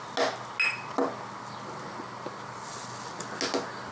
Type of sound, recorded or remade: recorded